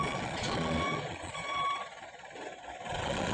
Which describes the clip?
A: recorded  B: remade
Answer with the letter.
B